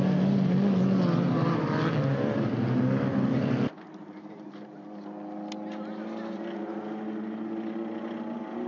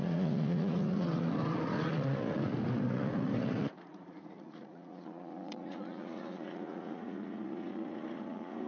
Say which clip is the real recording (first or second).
first